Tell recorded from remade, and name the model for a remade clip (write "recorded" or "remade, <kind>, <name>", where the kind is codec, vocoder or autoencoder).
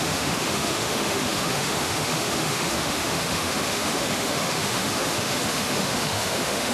remade, autoencoder, DAC-VAE